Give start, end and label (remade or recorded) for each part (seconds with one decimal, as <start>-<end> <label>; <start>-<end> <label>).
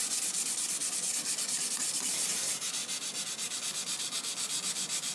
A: 0.0-2.8 remade; 2.8-3.6 recorded; 3.6-5.1 remade